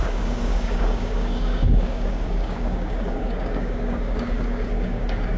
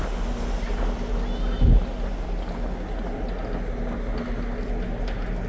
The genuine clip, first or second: second